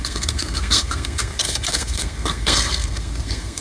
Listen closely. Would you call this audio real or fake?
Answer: fake